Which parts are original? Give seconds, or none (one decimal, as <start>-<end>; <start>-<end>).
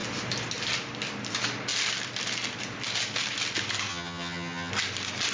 0.0-3.9; 4.7-5.3